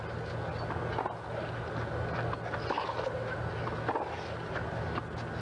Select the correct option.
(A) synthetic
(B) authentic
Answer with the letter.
B